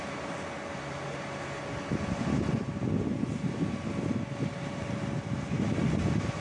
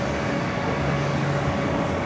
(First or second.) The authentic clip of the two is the first